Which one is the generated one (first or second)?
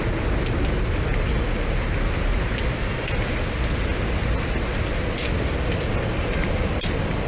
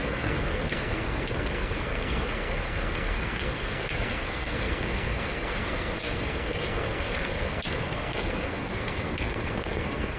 second